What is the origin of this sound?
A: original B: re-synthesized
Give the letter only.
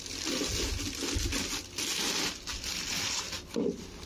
A